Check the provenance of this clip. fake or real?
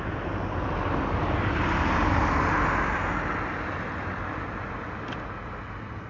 real